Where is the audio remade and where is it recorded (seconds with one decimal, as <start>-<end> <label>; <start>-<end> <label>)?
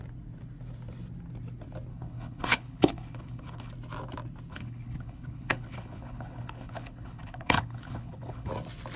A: 0.0-1.9 recorded; 1.9-3.7 remade; 3.7-4.5 recorded; 4.5-8.5 remade; 8.5-9.0 recorded